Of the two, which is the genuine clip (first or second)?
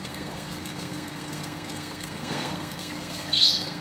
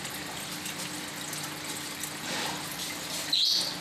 second